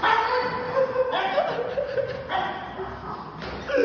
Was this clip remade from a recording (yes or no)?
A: no